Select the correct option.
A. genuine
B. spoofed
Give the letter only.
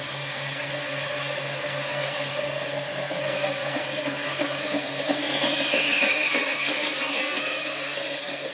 B